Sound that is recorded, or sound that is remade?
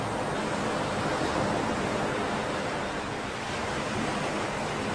recorded